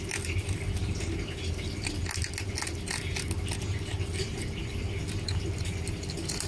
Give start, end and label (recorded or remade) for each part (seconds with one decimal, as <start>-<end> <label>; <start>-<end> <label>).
0.0-6.5 recorded